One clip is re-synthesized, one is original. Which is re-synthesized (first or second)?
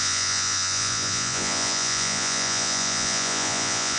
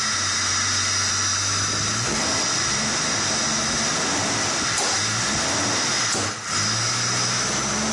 first